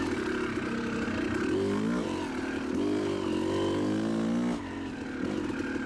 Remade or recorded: recorded